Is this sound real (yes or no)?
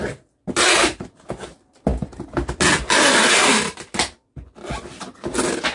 yes